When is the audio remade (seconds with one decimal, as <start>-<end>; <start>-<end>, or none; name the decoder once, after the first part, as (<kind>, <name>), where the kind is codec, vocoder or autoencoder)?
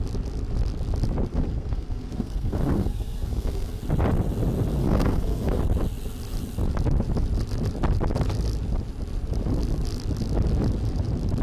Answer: 1.3-3.8 (codec, SNAC); 4.8-5.6